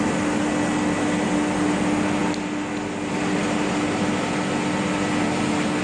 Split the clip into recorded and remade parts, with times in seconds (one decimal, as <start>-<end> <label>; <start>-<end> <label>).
0.0-5.8 recorded